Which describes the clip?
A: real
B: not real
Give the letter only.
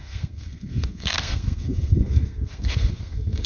B